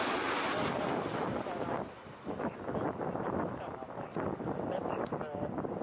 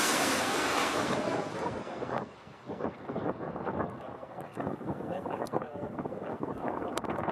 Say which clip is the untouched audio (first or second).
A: first